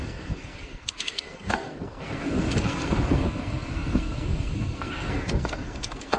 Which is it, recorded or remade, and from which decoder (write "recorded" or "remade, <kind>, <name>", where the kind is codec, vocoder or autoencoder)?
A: remade, codec, SNAC